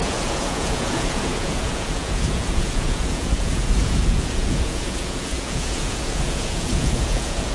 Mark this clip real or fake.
fake